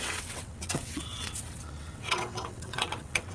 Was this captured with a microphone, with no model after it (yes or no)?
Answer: no